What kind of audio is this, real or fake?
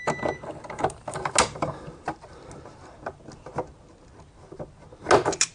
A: real